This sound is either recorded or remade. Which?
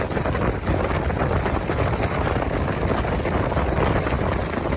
recorded